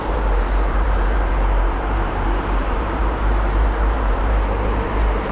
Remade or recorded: remade